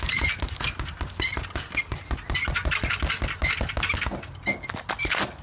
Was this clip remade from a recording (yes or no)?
no